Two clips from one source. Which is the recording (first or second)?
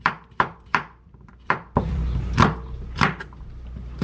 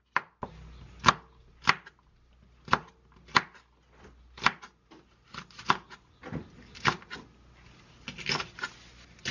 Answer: second